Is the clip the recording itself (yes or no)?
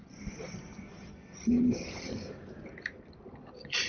no